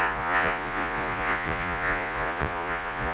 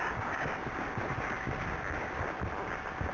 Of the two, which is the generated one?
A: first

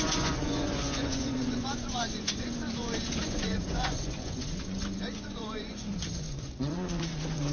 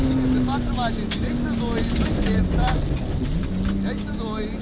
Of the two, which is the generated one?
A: first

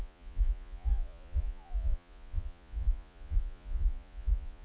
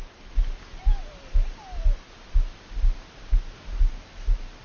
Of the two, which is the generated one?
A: first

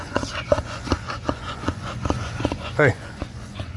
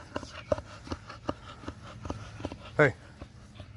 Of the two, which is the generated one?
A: first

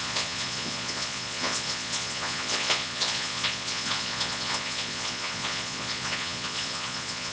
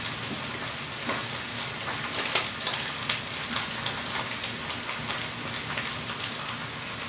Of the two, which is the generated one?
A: first